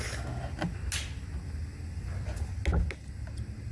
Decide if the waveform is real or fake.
real